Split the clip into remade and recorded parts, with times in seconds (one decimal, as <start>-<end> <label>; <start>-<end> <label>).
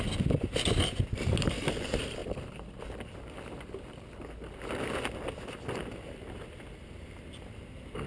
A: 0.0-8.1 recorded